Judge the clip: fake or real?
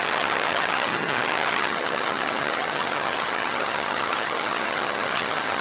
fake